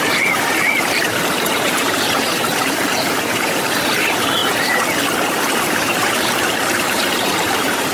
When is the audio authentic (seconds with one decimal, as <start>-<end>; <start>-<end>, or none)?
4.4-5.6